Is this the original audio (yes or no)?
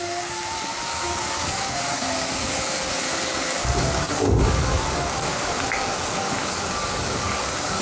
no